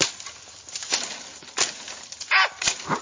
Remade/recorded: recorded